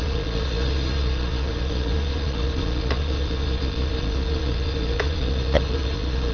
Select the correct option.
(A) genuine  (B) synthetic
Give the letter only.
B